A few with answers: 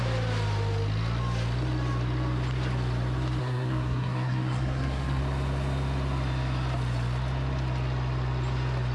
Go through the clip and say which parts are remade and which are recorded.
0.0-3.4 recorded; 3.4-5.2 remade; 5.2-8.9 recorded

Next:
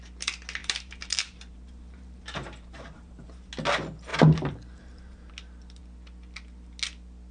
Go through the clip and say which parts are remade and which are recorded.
0.0-0.6 recorded; 0.6-3.5 remade; 3.5-4.1 recorded; 4.1-5.3 remade; 5.3-7.3 recorded

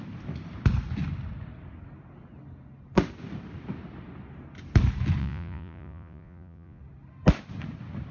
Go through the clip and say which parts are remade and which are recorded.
0.0-5.2 recorded; 5.2-6.8 remade; 6.8-8.1 recorded

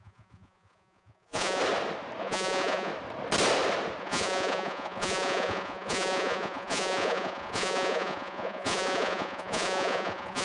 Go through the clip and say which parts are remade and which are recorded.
0.0-1.6 remade; 1.6-2.2 recorded; 2.2-2.9 remade; 2.9-4.0 recorded; 4.0-10.4 remade

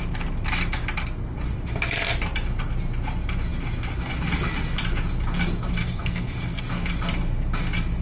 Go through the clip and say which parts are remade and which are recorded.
0.0-5.8 recorded; 5.8-6.6 remade; 6.6-8.0 recorded

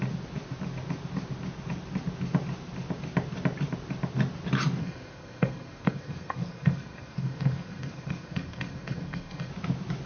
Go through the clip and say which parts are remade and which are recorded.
0.0-4.8 recorded; 4.8-9.5 remade; 9.5-10.1 recorded